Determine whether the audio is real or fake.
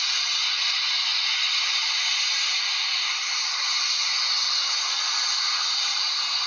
real